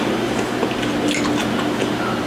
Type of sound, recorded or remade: recorded